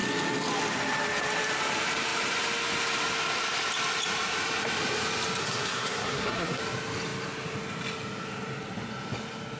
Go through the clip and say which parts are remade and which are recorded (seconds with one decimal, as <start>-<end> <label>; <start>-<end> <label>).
0.0-5.4 recorded; 5.4-6.6 remade; 6.6-9.6 recorded